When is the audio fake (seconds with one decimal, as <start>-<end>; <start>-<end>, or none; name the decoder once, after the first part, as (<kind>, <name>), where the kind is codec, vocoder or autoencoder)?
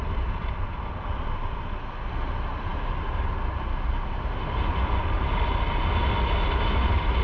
none